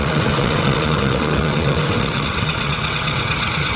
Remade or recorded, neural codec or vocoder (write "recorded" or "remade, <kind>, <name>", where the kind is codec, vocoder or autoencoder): remade, vocoder, WaveNeXt